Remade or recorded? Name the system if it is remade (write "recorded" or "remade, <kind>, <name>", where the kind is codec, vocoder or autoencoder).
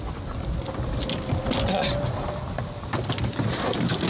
recorded